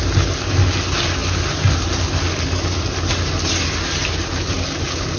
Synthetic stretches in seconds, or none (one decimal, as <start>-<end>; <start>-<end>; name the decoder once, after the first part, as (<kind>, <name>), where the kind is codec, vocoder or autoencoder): none